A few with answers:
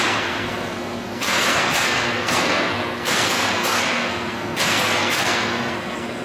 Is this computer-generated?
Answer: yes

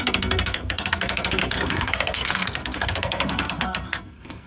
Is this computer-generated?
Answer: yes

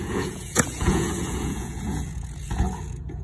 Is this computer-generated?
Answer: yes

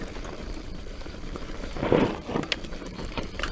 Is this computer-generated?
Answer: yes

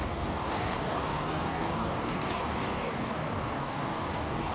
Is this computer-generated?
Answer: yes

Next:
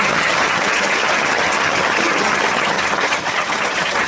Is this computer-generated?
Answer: yes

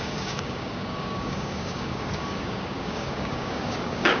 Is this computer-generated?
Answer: yes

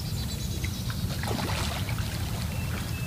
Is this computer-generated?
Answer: no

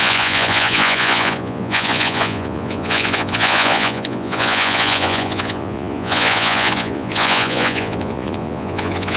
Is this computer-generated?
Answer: yes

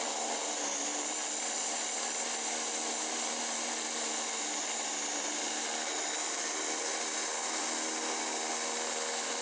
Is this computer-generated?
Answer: no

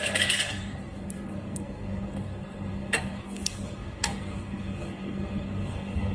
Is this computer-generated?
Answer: yes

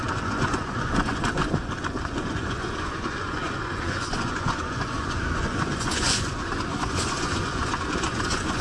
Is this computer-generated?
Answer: yes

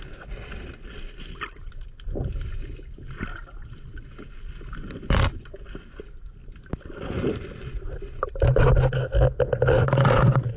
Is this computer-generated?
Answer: no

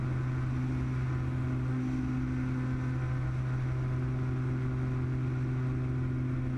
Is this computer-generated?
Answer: no